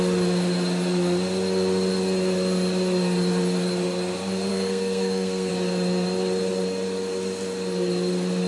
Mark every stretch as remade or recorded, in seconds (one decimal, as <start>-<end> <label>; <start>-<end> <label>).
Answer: 0.0-4.5 recorded; 4.5-5.5 remade; 5.5-8.5 recorded